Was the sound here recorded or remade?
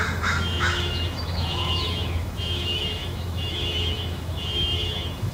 remade